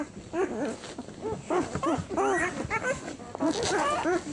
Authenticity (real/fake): real